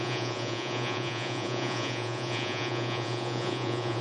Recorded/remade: remade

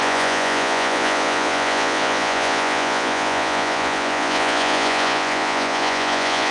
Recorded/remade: remade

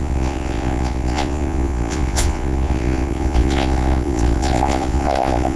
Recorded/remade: remade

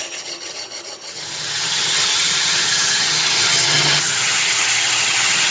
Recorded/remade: remade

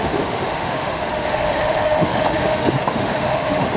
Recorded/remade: remade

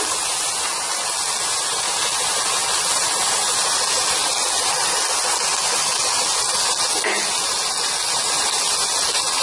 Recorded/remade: recorded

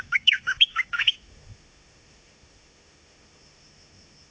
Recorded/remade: remade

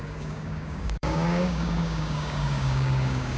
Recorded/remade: remade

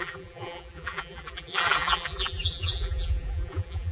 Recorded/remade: remade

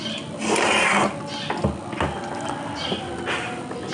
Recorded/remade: recorded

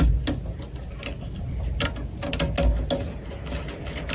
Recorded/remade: recorded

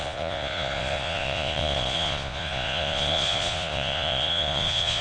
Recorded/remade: remade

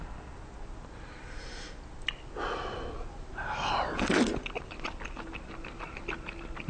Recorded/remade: recorded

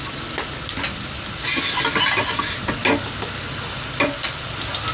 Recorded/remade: recorded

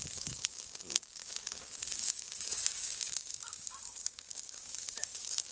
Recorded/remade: remade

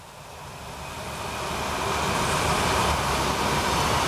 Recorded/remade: recorded